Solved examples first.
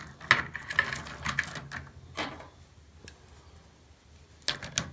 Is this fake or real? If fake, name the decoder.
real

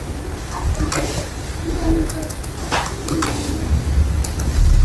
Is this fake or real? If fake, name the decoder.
real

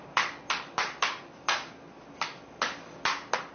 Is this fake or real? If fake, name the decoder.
real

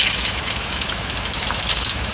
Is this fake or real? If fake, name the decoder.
fake, autoencoder, DAC-VAE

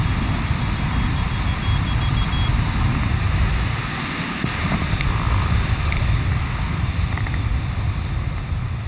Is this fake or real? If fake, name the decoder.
real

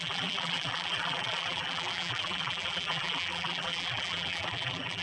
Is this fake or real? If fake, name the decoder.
fake, vocoder, BigVGAN v2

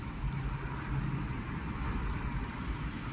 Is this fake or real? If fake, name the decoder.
real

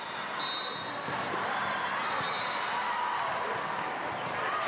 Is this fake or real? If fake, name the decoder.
real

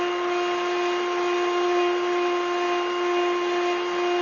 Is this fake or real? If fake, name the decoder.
real